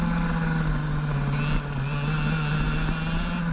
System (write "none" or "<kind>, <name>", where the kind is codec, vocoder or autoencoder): none